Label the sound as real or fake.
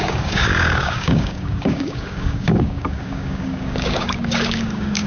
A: fake